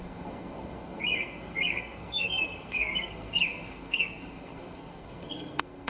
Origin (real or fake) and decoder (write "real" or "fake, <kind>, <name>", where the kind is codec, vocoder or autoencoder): fake, codec, SNAC